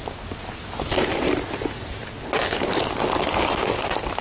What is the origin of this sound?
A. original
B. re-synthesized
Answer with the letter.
A